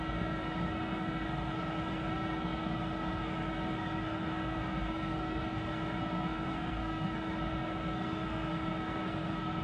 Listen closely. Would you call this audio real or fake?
fake